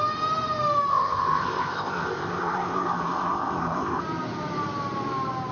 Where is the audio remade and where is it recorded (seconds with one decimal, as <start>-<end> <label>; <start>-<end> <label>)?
0.0-0.9 recorded; 0.9-4.0 remade; 4.0-5.5 recorded